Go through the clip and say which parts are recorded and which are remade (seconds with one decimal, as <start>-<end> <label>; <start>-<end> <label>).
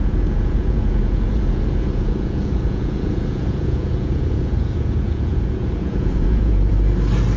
0.0-6.7 remade; 6.7-7.4 recorded